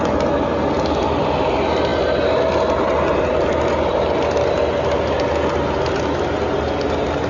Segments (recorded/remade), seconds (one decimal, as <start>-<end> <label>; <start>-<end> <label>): 0.0-7.3 recorded